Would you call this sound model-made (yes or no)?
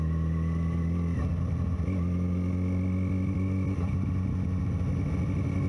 no